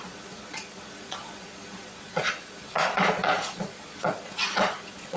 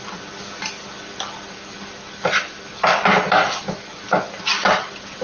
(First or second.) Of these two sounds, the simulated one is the first